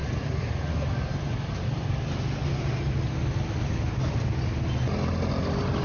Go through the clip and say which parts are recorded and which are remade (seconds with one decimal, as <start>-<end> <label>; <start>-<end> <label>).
0.0-5.8 recorded